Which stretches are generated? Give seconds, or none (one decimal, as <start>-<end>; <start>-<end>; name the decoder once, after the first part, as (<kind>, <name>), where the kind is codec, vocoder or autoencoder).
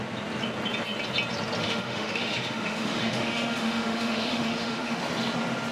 1.6-5.0 (autoencoder, DAC-VAE)